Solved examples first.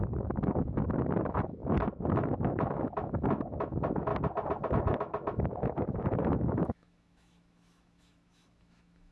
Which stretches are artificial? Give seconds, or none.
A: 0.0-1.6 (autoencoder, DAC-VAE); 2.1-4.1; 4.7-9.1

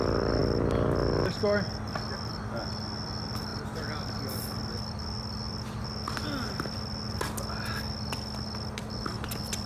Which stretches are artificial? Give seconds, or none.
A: none

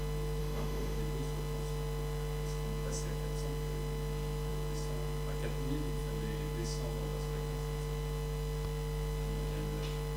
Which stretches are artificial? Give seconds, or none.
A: 0.4-1.0 (autoencoder, DAC-VAE)

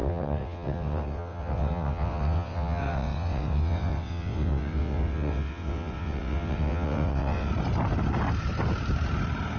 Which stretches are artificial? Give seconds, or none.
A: 0.0-7.5 (vocoder, WaveNeXt)

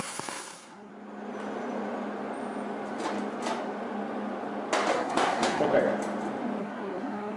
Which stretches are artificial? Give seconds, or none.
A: 0.0-0.9 (codec, SNAC); 4.9-5.7; 6.6-7.4